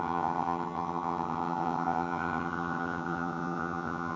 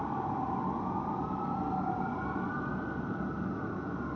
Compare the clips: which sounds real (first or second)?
second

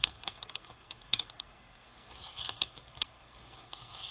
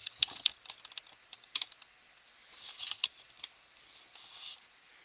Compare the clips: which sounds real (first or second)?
second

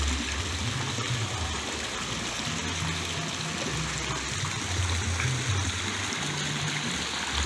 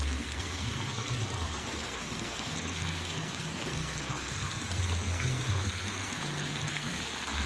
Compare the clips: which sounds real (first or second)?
first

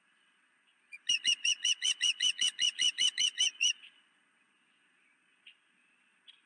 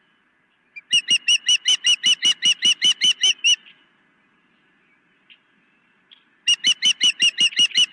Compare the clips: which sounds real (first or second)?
second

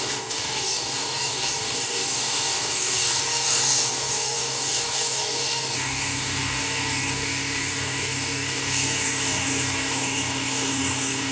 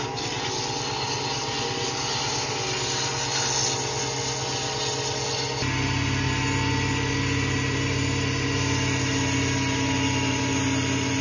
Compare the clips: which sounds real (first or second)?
second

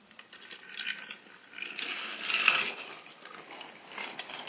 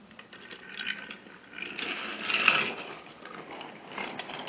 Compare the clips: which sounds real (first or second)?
second